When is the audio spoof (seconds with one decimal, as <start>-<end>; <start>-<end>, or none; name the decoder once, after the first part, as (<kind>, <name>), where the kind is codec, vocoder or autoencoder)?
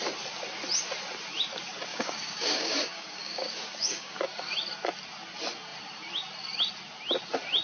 1.9-4.2 (codec, DAC)